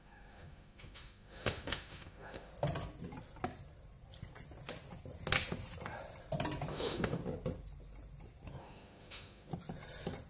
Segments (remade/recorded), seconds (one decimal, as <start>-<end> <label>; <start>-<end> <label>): 0.0-2.5 remade; 2.5-6.7 recorded; 6.7-7.2 remade; 7.2-8.6 recorded; 8.6-9.5 remade; 9.5-10.3 recorded

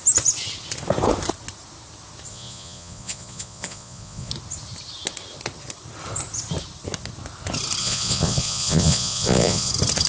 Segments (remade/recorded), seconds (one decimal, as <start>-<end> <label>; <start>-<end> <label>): 0.0-2.3 recorded; 2.3-4.3 remade; 4.3-7.8 recorded; 7.8-9.7 remade; 9.7-10.1 recorded